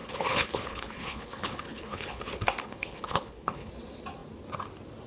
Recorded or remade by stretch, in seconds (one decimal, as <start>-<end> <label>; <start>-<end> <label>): 0.0-2.2 remade; 2.2-2.6 recorded; 2.6-3.7 remade; 3.7-5.1 recorded